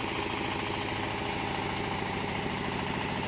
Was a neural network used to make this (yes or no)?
no